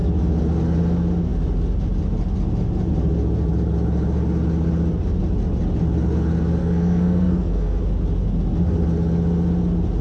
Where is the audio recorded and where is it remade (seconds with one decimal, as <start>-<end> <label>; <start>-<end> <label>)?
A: 0.0-6.6 recorded; 6.6-7.8 remade; 7.8-10.0 recorded